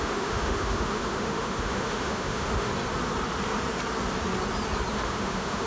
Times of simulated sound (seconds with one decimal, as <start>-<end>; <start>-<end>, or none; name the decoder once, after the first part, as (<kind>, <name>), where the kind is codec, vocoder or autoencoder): 0.0-2.7 (autoencoder, DAC-VAE); 4.9-5.7